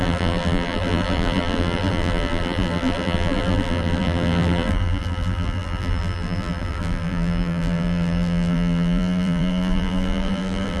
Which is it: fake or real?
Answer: fake